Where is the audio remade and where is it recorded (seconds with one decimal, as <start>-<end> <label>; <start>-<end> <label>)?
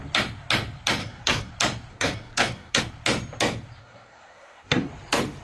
0.0-1.0 recorded; 1.0-1.5 remade; 1.5-1.9 recorded; 1.9-2.8 remade; 2.8-3.8 recorded; 3.8-4.9 remade; 4.9-5.4 recorded